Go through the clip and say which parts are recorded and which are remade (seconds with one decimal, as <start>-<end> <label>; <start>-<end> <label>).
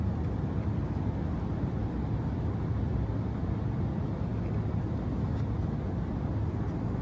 0.0-1.8 recorded; 1.8-3.4 remade; 3.4-7.0 recorded